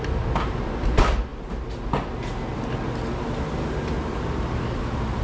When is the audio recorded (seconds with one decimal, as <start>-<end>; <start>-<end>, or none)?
0.0-5.2